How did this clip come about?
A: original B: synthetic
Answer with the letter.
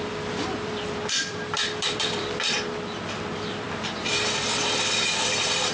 B